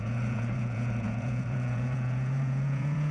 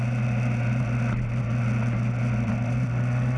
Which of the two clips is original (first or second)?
second